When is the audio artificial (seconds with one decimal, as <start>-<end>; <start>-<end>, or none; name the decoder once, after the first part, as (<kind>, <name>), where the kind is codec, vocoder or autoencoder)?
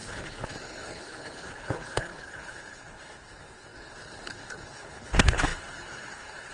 0.0-6.5 (codec, HILCodec)